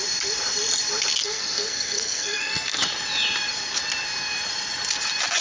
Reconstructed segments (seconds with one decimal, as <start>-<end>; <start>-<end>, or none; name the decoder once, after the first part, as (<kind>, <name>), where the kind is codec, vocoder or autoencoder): 1.2-2.8 (codec, SNAC)